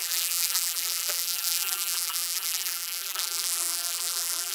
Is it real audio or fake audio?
fake